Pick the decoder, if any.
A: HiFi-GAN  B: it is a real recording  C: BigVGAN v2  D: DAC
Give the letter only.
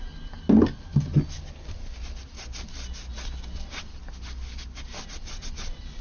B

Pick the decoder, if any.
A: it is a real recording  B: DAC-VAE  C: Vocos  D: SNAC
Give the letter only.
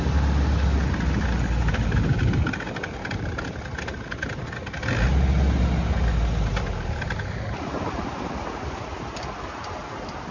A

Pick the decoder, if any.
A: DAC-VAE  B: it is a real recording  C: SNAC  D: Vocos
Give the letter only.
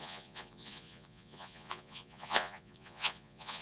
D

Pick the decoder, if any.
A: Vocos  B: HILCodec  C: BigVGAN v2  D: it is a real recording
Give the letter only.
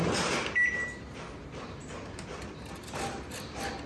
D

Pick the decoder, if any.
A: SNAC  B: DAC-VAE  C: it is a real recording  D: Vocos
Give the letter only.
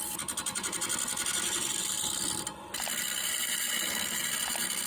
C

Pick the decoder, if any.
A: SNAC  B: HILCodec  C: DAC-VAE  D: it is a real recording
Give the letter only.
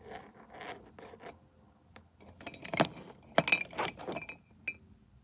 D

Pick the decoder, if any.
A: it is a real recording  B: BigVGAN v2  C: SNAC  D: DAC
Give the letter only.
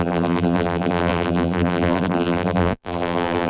B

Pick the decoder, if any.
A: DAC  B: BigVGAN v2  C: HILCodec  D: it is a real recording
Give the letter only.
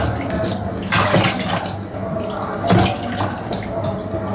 D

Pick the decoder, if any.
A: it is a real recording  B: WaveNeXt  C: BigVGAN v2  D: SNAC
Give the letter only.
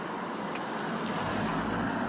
A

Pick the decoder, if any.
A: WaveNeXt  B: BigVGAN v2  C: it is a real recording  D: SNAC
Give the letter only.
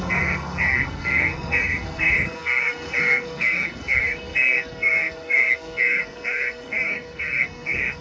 D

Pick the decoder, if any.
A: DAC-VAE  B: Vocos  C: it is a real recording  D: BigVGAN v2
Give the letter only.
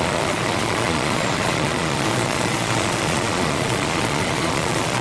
B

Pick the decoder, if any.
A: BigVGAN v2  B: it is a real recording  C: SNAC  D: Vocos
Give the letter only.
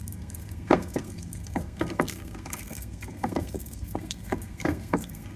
C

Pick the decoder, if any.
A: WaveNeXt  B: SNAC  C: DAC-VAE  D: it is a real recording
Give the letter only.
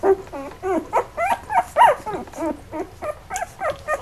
D